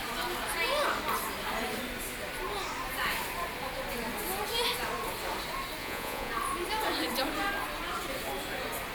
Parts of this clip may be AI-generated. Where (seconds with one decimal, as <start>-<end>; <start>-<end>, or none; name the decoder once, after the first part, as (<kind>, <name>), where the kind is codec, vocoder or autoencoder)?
5.8-6.3 (vocoder, Vocos)